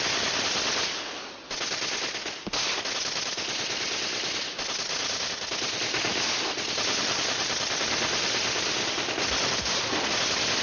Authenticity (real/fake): real